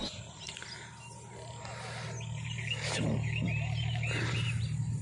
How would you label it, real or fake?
real